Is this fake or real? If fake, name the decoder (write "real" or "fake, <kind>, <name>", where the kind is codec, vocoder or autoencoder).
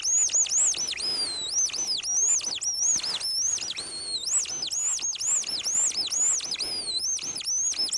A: real